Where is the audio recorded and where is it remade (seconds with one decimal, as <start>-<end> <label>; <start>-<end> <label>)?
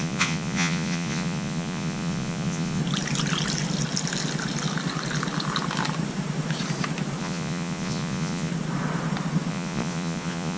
0.0-2.8 remade; 2.8-7.2 recorded; 7.2-8.5 remade; 8.5-9.5 recorded; 9.5-10.6 remade